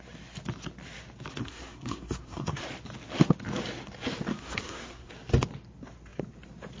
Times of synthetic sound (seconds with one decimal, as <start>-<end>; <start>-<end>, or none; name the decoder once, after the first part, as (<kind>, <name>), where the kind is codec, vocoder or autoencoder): 1.4-2.6 (codec, SNAC); 4.3-5.1